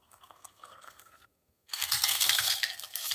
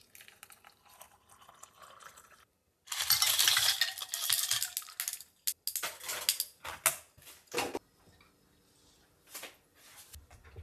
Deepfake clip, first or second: first